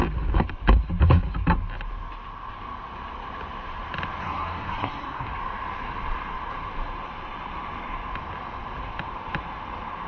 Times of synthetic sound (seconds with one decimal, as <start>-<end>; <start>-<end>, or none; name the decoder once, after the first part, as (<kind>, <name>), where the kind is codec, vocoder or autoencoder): 4.2-5.3 (codec, SNAC)